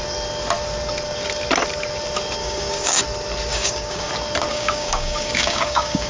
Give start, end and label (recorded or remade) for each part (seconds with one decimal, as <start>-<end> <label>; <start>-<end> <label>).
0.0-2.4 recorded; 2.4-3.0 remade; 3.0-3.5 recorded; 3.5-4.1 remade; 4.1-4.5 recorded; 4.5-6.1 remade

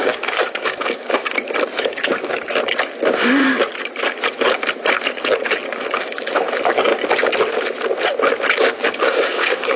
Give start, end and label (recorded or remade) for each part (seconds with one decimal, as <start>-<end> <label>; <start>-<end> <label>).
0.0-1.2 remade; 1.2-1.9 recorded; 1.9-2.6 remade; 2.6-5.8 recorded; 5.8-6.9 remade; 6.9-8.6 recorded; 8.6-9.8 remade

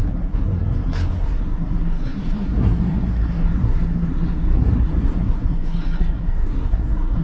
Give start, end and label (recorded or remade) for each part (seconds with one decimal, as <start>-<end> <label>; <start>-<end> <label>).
0.0-7.2 remade

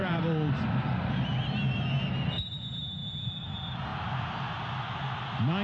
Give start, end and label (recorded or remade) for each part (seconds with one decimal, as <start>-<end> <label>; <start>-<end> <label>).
0.0-0.6 remade; 0.6-5.6 recorded